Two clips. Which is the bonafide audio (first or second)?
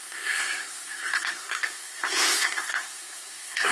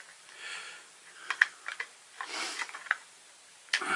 second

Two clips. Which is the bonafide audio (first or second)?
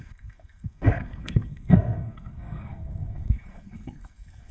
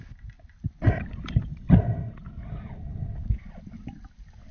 second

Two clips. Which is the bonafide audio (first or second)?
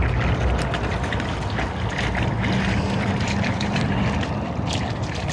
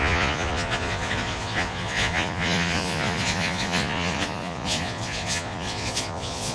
first